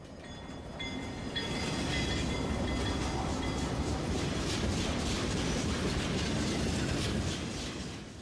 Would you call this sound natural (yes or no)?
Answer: yes